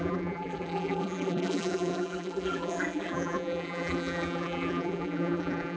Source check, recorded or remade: remade